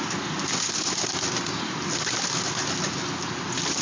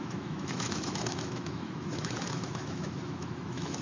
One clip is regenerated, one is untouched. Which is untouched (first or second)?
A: first